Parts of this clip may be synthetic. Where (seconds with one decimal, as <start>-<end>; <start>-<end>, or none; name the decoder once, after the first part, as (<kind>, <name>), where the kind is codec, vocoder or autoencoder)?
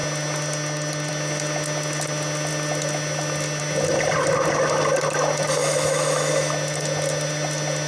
5.6-6.3 (autoencoder, DAC-VAE)